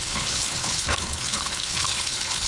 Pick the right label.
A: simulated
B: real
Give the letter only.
A